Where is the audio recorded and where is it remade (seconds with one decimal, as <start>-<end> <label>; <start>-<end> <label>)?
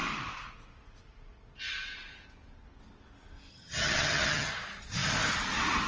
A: 0.0-3.5 recorded; 3.5-4.5 remade; 4.5-5.9 recorded